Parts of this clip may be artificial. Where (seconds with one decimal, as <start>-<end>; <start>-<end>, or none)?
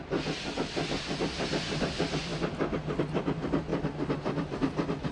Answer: none